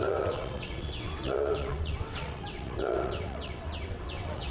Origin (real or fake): fake